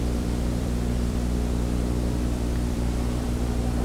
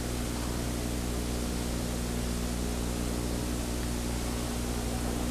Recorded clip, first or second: second